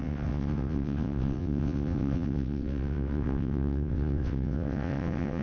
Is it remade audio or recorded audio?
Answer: remade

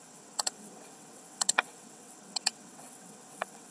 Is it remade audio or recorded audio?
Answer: remade